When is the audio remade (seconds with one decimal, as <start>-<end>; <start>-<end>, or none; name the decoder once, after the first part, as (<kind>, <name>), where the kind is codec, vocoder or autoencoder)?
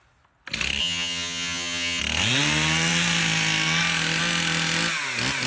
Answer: 0.8-2.0 (vocoder, HiFi-GAN)